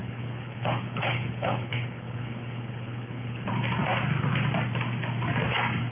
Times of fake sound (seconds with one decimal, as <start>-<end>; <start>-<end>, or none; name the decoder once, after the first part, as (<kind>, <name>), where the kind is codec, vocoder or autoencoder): 0.0-3.5 (codec, HILCodec)